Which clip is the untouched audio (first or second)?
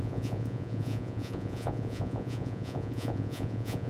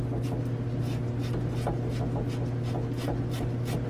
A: second